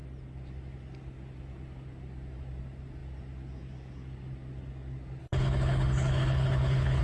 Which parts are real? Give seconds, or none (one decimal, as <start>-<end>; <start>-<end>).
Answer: 0.0-5.2

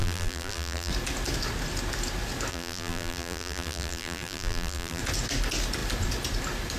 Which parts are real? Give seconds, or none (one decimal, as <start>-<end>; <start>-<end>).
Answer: 0.9-2.5; 5.0-6.8

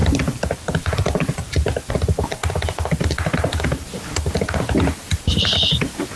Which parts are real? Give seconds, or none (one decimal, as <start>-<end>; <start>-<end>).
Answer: 2.4-6.2